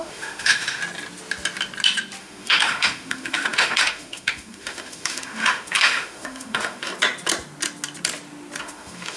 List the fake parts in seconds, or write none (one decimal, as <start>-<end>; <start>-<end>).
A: 0.0-0.8; 2.2-6.9; 8.6-9.2